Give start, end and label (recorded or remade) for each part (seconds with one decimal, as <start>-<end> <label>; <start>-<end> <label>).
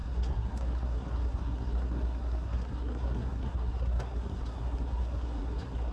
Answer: 0.0-5.9 remade